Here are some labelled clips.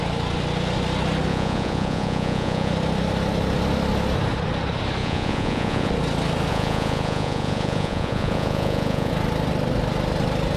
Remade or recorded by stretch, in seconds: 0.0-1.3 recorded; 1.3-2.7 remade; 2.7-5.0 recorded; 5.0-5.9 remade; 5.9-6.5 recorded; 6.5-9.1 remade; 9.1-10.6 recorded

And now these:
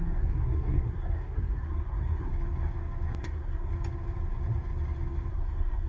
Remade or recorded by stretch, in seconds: 0.0-2.3 remade; 2.3-3.2 recorded; 3.2-3.7 remade; 3.7-5.3 recorded; 5.3-5.9 remade

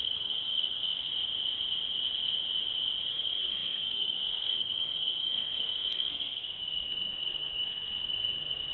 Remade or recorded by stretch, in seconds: 0.0-1.1 remade; 1.1-3.1 recorded; 3.1-8.7 remade

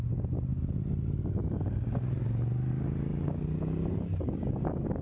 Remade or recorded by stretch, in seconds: 0.0-5.0 recorded

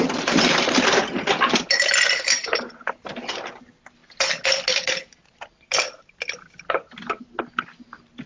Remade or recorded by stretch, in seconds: 0.0-8.3 recorded

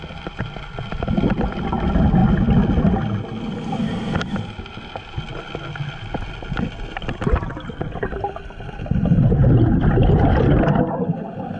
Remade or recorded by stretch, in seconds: 0.0-11.6 recorded